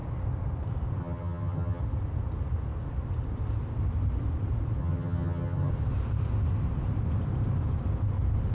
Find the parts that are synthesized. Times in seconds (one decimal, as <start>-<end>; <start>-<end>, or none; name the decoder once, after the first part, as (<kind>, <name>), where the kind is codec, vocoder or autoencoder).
1.0-1.8 (vocoder, HiFi-GAN); 4.8-5.7